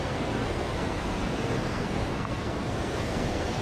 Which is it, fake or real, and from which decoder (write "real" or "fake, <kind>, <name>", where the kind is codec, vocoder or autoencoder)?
fake, codec, SNAC